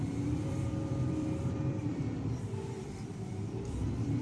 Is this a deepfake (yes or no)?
yes